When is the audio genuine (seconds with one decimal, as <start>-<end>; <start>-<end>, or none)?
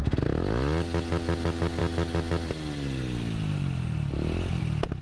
0.0-5.0